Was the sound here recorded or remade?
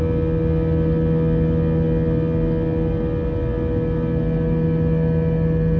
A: recorded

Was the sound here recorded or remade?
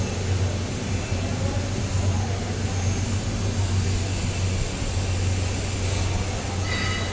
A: recorded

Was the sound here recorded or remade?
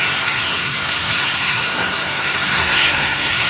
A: remade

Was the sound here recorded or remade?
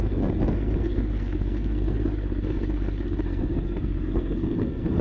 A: remade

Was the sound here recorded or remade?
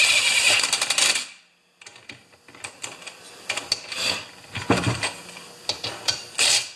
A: recorded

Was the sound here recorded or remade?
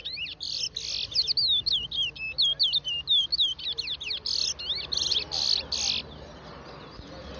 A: recorded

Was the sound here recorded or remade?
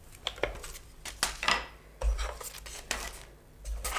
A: recorded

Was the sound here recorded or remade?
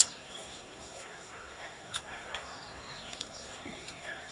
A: remade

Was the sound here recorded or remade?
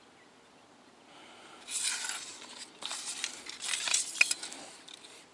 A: recorded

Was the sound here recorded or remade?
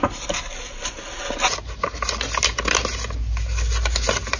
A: recorded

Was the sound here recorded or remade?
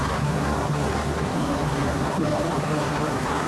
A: remade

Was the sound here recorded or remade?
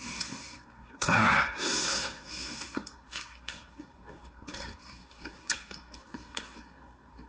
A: remade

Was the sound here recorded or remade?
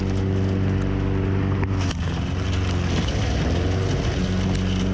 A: recorded